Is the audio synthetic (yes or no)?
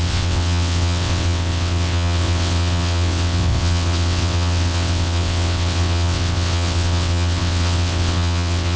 yes